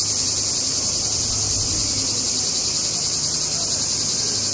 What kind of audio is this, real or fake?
fake